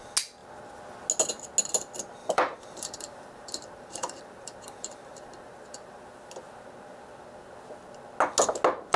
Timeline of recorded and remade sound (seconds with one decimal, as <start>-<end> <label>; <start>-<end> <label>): 0.0-2.2 recorded; 2.2-6.0 remade; 6.0-9.0 recorded